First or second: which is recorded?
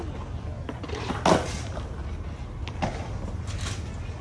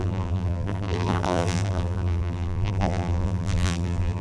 first